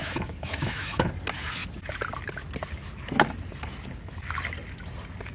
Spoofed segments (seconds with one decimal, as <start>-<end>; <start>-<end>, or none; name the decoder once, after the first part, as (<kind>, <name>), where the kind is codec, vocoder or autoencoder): 0.0-1.1 (autoencoder, DAC-VAE)